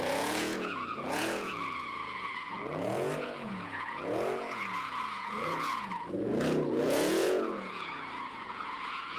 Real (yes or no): no